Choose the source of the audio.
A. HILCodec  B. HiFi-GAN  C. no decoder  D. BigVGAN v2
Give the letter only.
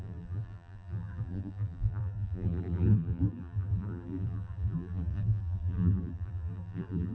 D